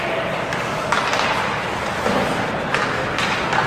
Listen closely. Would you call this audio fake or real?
real